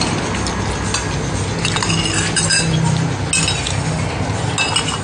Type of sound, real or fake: real